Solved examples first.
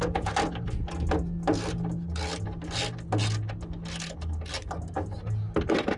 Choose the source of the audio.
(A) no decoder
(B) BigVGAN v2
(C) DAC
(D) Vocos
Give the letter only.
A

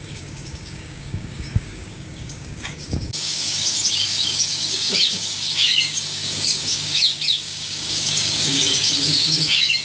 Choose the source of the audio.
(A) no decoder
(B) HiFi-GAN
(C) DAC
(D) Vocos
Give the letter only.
C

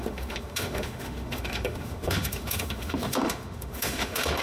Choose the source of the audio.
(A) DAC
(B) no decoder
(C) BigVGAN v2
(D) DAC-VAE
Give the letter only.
D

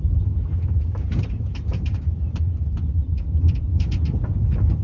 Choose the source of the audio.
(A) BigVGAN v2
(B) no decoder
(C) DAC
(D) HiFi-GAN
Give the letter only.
A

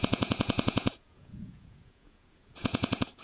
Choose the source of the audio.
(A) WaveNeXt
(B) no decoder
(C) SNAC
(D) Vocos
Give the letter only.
D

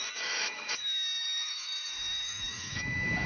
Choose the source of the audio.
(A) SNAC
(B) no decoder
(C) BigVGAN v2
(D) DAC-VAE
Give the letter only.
D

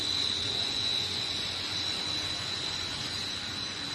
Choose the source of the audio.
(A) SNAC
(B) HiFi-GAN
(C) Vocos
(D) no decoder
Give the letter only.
C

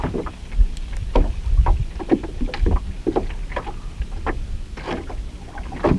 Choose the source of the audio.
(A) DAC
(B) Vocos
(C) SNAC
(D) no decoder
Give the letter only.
D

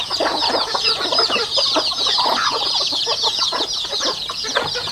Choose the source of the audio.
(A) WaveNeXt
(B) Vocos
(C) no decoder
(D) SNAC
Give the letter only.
B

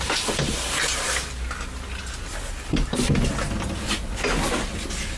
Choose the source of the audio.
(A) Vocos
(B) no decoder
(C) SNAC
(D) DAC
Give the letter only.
B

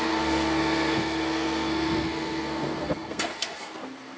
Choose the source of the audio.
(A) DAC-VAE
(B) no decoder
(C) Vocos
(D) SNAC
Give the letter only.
D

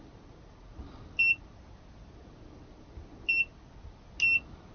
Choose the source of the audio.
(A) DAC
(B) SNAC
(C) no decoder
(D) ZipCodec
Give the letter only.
C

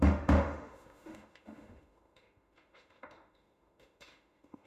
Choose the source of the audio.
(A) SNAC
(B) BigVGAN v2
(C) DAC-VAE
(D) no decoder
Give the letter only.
C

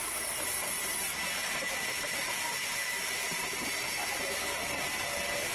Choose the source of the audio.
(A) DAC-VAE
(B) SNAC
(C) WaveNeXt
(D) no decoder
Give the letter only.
D